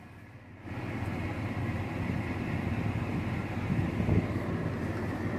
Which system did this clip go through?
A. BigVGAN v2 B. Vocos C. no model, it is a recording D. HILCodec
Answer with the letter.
C